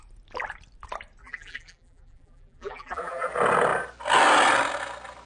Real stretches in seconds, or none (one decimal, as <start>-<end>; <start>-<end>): 0.0-1.2; 3.3-5.3